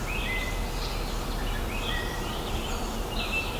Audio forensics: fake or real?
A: real